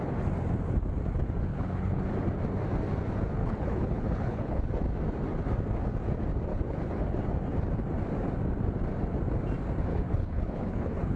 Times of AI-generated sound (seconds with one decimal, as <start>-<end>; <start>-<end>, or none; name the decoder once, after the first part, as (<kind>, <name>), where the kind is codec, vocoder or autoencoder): 1.5-2.1 (codec, HILCodec); 3.4-4.7; 6.5-7.2; 9.9-11.2